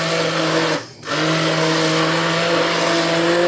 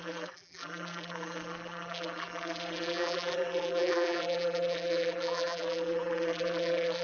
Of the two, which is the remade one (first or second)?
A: second